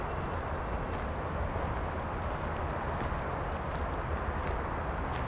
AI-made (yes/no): no